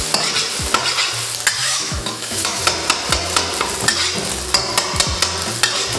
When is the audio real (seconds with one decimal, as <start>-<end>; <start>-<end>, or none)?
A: 0.0-1.6; 2.6-6.0